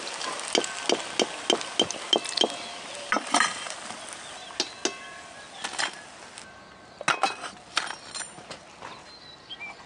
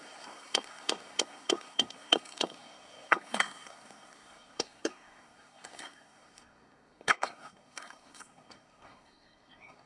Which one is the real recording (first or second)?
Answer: first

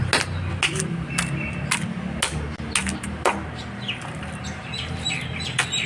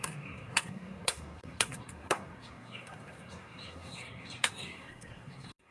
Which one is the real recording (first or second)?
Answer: first